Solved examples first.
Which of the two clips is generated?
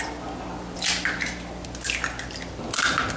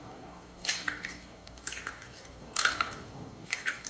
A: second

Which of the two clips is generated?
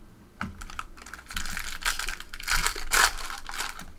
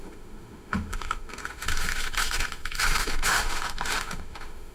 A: second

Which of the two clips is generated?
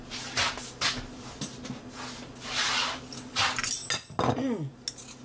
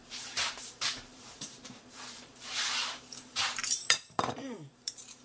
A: second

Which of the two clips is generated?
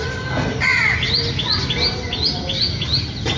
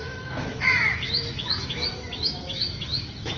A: second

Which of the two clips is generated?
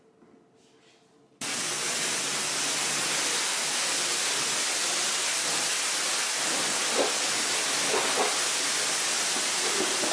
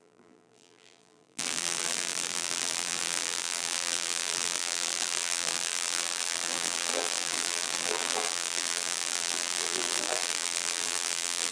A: second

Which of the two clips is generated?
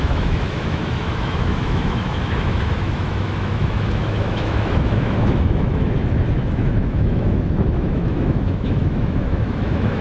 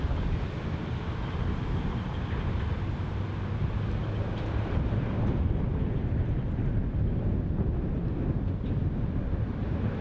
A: first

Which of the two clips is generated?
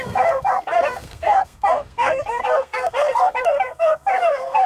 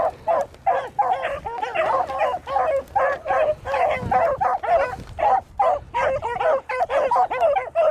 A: first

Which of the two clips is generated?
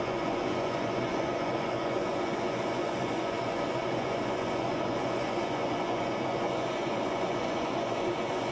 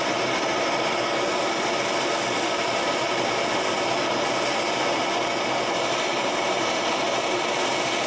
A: first